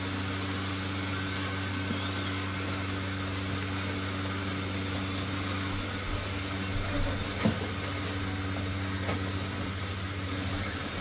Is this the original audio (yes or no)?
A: yes